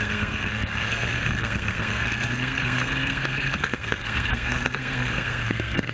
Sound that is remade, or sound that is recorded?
remade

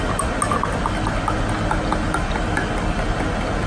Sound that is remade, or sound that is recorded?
recorded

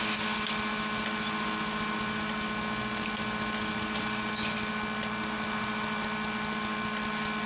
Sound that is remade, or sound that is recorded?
recorded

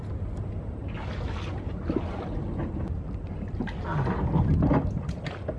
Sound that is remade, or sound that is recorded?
recorded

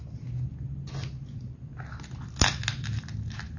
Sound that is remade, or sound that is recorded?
recorded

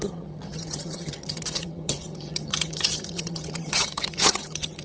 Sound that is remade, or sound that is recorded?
remade